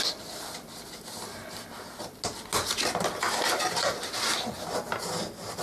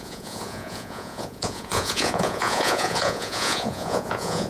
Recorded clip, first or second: first